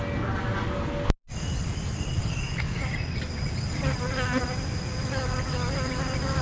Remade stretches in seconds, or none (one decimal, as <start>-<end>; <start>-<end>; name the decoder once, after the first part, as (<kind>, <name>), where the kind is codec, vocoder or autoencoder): 2.2-2.8 (codec, DAC)